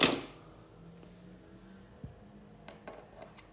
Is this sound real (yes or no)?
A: yes